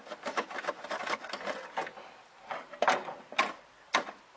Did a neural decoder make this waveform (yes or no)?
no